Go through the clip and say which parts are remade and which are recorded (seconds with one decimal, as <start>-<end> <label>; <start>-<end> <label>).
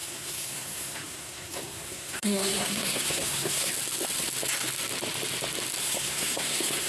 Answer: 0.0-3.7 remade; 3.7-5.8 recorded; 5.8-6.9 remade